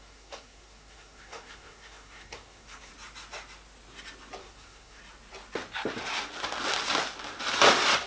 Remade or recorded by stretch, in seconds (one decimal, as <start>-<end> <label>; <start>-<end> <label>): 0.0-2.9 remade; 2.9-4.4 recorded; 4.4-5.0 remade; 5.0-8.1 recorded